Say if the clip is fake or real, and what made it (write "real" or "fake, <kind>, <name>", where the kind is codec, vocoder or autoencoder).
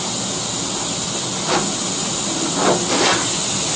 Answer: real